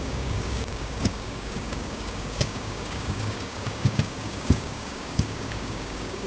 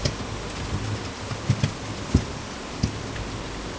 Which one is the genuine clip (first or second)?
second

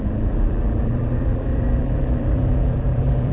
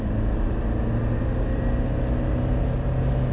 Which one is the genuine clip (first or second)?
second